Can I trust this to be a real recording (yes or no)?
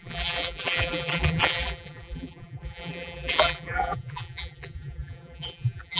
no